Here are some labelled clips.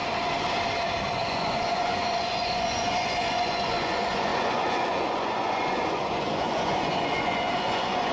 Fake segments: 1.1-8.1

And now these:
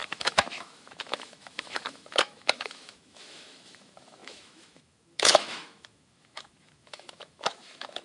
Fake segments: 0.0-8.0

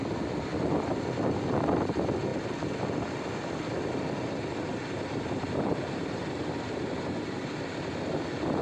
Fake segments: 4.7-7.5

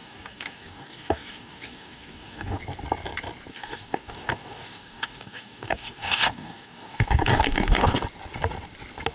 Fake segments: 0.0-2.6; 3.5-8.0

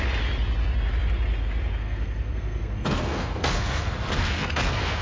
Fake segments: 1.8-5.0

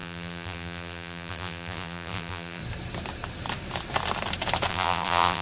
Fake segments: 0.0-2.6; 4.7-5.4

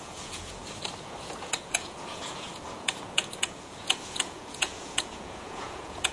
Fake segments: 0.0-0.6; 1.2-6.1

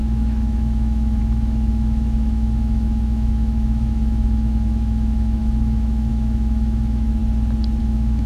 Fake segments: 0.0-7.2; 7.8-8.3